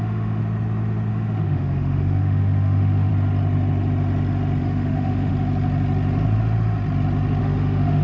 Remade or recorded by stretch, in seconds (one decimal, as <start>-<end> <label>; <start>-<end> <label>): 0.0-0.4 remade; 0.4-1.1 recorded; 1.1-3.1 remade; 3.1-4.6 recorded; 4.6-5.3 remade; 5.3-7.4 recorded; 7.4-8.0 remade